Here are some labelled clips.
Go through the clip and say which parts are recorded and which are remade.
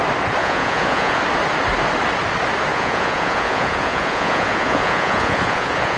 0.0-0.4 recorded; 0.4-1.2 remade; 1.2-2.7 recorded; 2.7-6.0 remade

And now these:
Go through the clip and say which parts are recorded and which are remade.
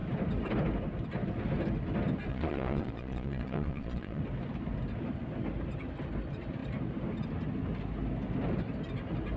0.0-2.3 recorded; 2.3-4.2 remade; 4.2-9.4 recorded